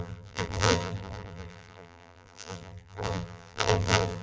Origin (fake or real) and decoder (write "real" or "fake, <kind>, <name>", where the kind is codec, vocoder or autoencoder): fake, vocoder, BigVGAN v2